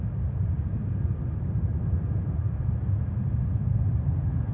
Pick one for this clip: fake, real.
real